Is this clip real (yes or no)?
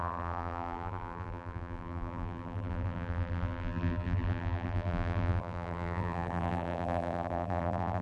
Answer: no